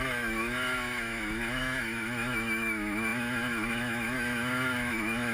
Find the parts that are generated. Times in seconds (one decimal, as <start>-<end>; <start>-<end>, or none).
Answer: 0.0-5.3